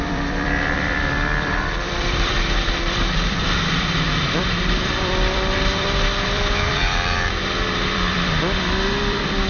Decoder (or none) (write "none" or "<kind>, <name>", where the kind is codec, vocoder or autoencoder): vocoder, BigVGAN v2